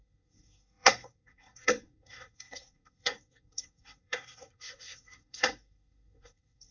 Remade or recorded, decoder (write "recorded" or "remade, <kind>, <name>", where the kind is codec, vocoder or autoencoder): remade, codec, SNAC